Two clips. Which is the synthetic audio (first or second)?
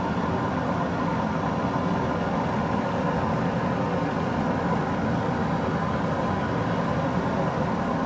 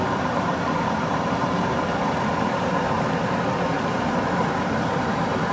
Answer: second